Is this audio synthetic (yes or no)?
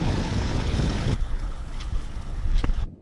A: yes